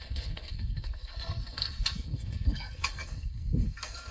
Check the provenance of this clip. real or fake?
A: fake